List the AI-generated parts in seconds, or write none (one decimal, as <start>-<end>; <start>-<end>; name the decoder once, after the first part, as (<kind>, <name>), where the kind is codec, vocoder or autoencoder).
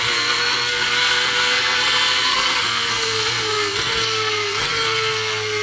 0.0-5.6 (codec, SNAC)